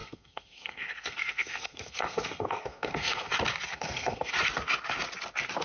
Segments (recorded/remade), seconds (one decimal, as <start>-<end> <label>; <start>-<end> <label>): 0.0-3.3 remade; 3.3-3.7 recorded; 3.7-4.3 remade; 4.3-5.6 recorded